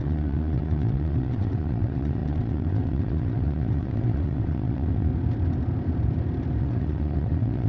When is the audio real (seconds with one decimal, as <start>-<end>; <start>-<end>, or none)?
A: 5.1-6.6